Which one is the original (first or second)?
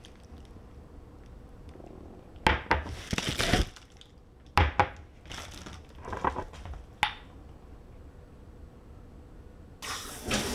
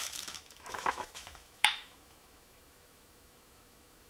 first